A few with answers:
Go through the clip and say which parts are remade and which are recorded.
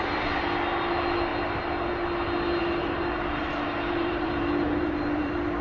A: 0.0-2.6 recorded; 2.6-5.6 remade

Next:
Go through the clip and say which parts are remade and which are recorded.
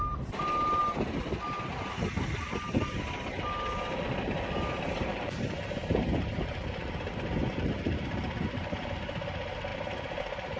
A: 0.0-0.8 remade; 0.8-4.6 recorded; 4.6-10.6 remade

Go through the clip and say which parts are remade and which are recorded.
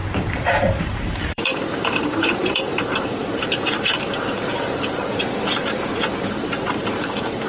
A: 0.0-0.8 recorded; 0.8-7.5 remade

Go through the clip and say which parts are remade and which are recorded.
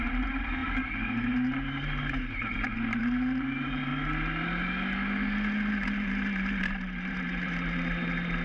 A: 0.0-3.9 remade; 3.9-5.7 recorded; 5.7-8.4 remade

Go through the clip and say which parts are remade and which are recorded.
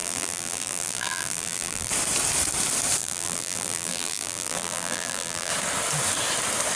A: 0.0-1.9 remade; 1.9-3.0 recorded; 3.0-5.5 remade; 5.5-6.8 recorded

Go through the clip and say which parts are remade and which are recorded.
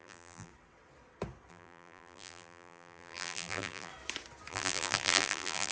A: 0.0-0.5 remade; 0.5-1.5 recorded; 1.5-3.9 remade; 3.9-4.5 recorded; 4.5-5.7 remade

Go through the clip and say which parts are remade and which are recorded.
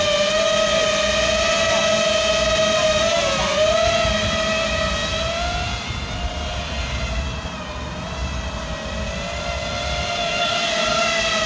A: 0.0-11.5 recorded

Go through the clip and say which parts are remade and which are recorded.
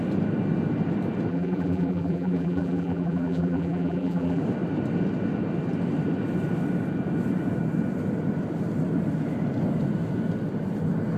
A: 0.0-1.3 recorded; 1.3-4.4 remade; 4.4-11.2 recorded